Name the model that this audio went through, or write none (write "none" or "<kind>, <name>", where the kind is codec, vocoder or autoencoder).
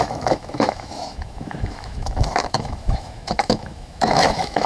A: autoencoder, DAC-VAE